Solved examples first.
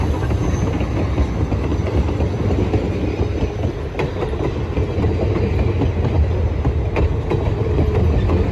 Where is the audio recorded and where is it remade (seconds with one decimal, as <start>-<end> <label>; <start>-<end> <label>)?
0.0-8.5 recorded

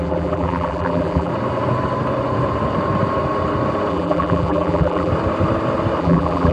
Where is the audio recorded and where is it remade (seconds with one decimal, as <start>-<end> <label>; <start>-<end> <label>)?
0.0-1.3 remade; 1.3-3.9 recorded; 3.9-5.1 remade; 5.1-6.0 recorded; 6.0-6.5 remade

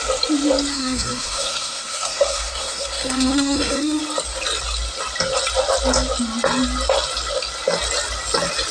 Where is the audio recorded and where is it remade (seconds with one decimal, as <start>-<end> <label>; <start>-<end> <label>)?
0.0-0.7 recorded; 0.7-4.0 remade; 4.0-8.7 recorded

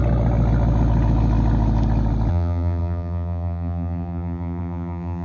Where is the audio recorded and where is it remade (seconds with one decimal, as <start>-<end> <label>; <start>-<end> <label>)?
0.0-2.3 recorded; 2.3-5.2 remade

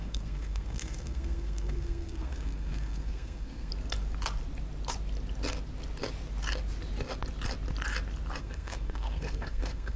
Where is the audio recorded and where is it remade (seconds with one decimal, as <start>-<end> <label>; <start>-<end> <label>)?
0.0-3.7 remade; 3.7-8.4 recorded; 8.4-10.0 remade

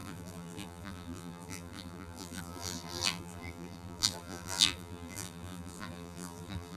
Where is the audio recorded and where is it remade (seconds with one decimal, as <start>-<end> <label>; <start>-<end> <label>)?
0.0-6.8 remade

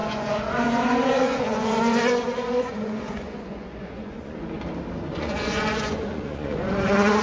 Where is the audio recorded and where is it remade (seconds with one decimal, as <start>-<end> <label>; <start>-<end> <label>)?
0.0-4.4 remade; 4.4-5.1 recorded; 5.1-7.2 remade